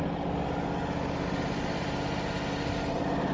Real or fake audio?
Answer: real